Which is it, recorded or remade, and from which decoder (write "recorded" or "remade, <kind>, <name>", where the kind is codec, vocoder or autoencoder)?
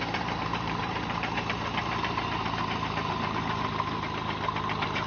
remade, vocoder, BigVGAN v2